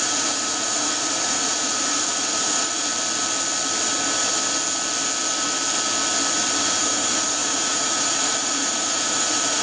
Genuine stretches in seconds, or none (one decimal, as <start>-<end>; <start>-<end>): 2.9-6.6